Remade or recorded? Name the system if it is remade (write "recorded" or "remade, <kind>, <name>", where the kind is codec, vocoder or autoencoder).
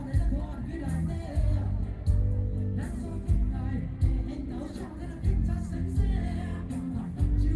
recorded